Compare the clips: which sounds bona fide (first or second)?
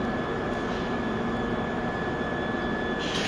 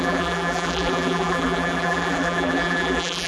first